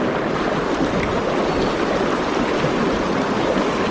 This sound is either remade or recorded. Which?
recorded